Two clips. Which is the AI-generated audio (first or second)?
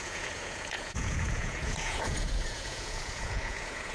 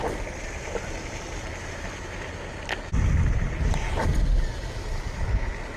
first